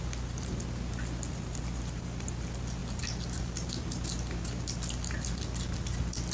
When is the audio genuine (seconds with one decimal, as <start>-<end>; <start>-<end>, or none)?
0.0-6.3